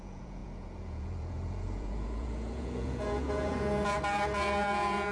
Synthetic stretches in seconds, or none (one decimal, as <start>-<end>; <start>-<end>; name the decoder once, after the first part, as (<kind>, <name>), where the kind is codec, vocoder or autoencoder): 0.0-5.1 (vocoder, Vocos)